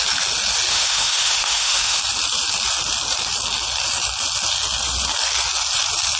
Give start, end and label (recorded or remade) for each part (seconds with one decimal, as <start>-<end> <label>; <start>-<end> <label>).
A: 0.0-0.7 recorded; 0.7-2.0 remade; 2.0-6.2 recorded